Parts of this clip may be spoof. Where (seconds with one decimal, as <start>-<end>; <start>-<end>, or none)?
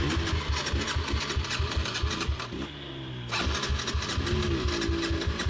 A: none